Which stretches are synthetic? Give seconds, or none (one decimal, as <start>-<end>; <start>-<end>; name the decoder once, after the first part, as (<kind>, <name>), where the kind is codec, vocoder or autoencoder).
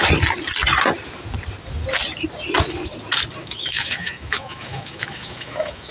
3.4-5.9 (autoencoder, DAC-VAE)